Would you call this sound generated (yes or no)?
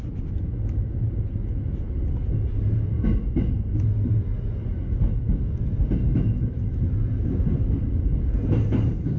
no